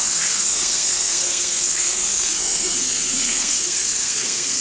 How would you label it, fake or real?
fake